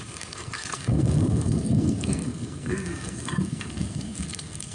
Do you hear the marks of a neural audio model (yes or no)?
yes